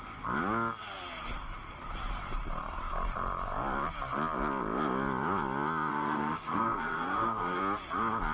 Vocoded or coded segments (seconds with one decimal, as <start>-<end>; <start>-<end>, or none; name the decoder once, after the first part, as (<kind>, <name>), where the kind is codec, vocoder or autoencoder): 5.9-7.6 (codec, SNAC)